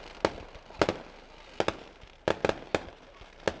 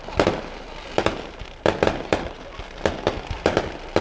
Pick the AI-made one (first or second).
second